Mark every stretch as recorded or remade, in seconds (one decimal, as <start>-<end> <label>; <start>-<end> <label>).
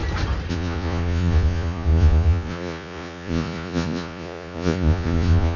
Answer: 0.0-0.5 recorded; 0.5-5.6 remade